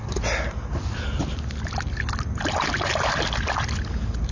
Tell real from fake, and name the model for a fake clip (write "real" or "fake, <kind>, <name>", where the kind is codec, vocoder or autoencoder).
real